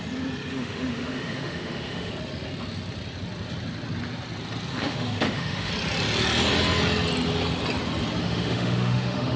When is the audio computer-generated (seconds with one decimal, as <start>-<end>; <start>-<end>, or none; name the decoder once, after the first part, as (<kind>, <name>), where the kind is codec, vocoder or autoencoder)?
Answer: 0.5-2.1 (autoencoder, DAC-VAE); 4.7-5.7; 8.2-9.4